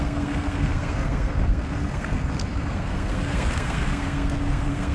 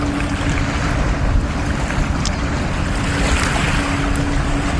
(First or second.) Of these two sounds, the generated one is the first